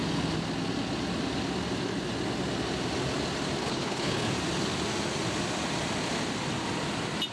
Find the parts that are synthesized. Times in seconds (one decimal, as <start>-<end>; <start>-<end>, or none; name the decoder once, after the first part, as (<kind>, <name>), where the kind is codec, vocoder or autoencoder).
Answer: 3.6-4.3 (codec, HILCodec)